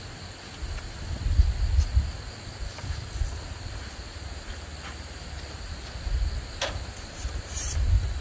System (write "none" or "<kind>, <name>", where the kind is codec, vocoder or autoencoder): none